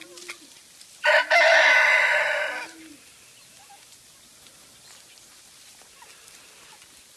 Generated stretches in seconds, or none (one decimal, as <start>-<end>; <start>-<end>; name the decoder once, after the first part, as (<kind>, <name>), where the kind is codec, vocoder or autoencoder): none